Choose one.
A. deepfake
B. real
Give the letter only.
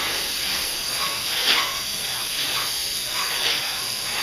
A